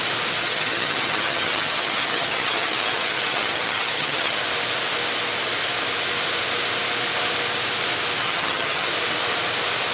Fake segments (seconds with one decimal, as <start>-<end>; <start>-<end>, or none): 0.4-4.4; 8.2-8.9